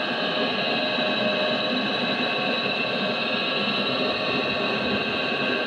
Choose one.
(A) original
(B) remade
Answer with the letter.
A